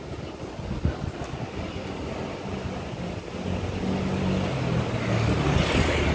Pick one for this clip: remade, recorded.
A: recorded